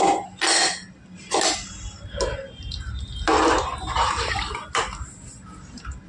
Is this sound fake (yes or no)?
no